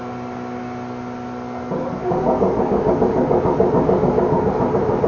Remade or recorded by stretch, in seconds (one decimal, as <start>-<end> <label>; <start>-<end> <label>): 0.0-2.0 recorded; 2.0-4.6 remade; 4.6-5.1 recorded